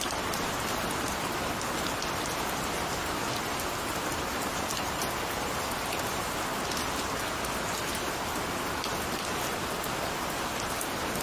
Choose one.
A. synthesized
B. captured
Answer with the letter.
B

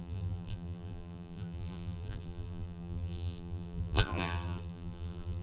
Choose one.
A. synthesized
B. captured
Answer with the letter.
A